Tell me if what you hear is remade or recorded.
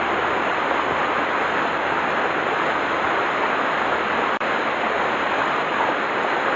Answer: recorded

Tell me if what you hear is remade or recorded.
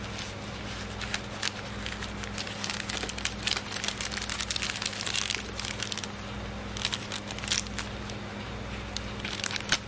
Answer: recorded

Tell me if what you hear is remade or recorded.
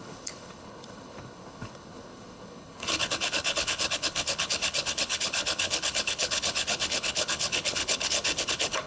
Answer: remade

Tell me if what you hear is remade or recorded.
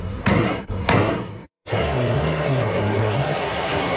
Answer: remade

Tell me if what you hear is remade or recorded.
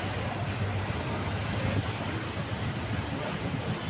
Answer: recorded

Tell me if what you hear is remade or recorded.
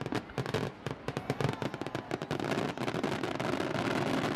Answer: recorded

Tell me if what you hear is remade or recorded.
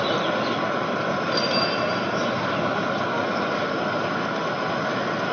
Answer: recorded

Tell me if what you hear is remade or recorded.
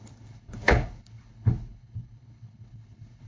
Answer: remade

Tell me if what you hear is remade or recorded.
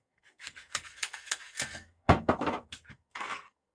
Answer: remade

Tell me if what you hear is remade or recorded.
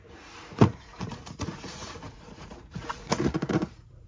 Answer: remade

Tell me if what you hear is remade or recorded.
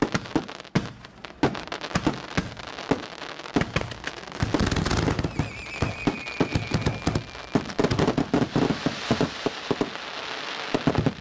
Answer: recorded